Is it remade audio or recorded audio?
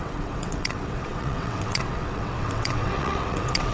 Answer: remade